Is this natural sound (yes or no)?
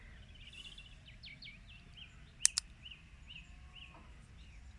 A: yes